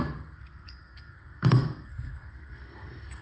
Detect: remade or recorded remade